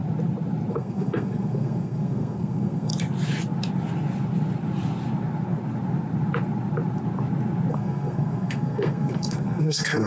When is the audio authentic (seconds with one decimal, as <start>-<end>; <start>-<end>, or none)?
0.0-0.7; 2.9-7.7

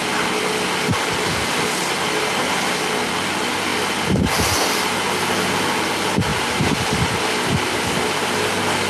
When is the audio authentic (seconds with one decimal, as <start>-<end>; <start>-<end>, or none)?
0.0-6.3; 7.2-8.9

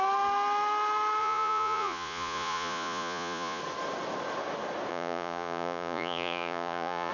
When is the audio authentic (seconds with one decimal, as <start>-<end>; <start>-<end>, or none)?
0.0-1.2; 3.6-4.9

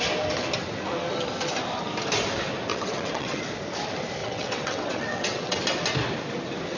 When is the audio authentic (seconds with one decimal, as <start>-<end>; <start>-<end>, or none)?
0.0-2.7; 3.4-4.2; 5.6-6.8

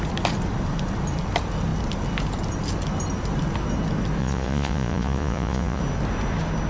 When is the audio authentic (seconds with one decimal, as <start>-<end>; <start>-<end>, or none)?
0.0-4.2; 5.8-6.7

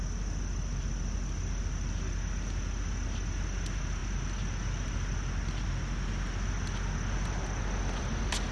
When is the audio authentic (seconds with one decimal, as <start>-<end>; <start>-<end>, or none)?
0.0-8.5